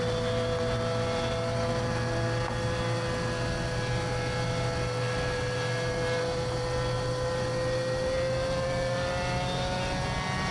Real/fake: real